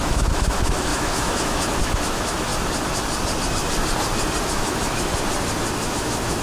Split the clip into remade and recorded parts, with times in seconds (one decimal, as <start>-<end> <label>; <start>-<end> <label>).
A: 0.0-2.5 remade; 2.5-4.4 recorded; 4.4-5.1 remade; 5.1-5.8 recorded; 5.8-6.4 remade